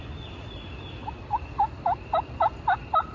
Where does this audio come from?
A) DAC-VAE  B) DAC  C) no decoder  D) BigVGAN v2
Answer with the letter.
C